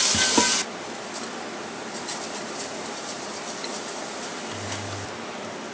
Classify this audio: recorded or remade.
recorded